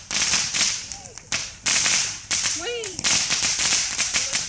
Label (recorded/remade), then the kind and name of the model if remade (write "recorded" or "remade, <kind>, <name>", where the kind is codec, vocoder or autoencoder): remade, vocoder, BigVGAN v2